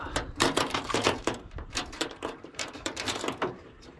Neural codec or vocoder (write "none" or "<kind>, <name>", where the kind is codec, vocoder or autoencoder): vocoder, BigVGAN v2